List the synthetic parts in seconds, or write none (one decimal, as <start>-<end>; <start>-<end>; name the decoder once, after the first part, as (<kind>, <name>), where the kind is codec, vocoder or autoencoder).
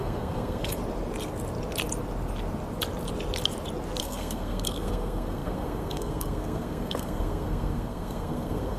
0.0-0.8 (codec, SNAC); 4.0-8.8